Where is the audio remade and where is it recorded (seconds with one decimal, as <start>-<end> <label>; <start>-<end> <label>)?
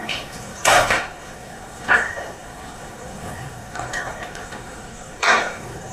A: 0.0-5.9 remade